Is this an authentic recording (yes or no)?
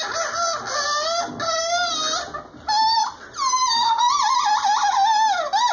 yes